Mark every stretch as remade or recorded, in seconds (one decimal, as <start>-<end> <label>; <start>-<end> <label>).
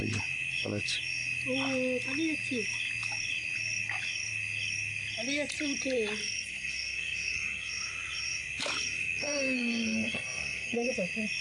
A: 0.0-6.2 recorded; 6.2-7.7 remade; 7.7-9.0 recorded; 9.0-10.9 remade; 10.9-11.4 recorded